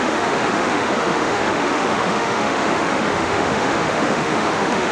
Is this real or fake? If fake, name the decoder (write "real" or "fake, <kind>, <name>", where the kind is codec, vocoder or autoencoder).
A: fake, autoencoder, DAC-VAE